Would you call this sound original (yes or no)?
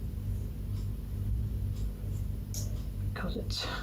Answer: yes